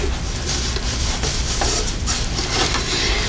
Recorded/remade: recorded